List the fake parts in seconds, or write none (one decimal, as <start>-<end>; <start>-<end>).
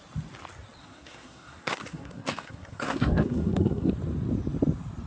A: 0.8-3.9